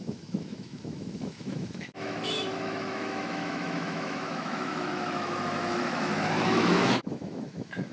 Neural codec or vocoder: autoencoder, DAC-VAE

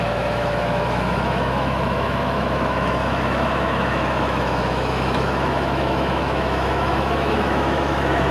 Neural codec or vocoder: autoencoder, DAC-VAE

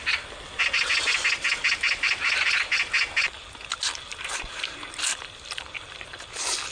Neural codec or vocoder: none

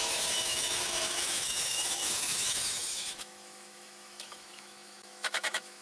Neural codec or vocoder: autoencoder, DAC-VAE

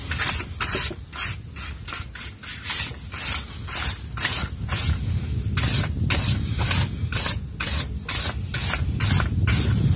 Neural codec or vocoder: none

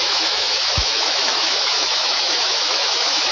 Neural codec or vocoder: autoencoder, DAC-VAE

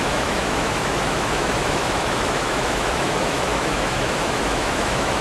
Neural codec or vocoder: autoencoder, DAC-VAE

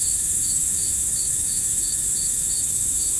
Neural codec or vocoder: autoencoder, DAC-VAE